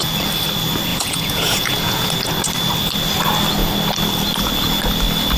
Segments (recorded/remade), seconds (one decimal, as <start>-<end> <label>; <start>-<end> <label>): 0.0-0.9 recorded; 0.9-2.1 remade; 2.1-5.4 recorded

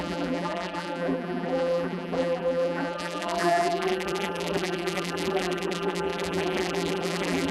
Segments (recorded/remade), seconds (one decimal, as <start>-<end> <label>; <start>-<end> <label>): 0.0-7.5 remade